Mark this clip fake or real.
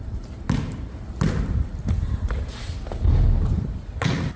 real